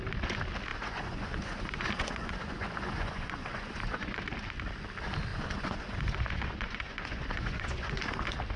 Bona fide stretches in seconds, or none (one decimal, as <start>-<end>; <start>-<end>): 0.0-0.7; 4.2-5.3; 8.0-8.6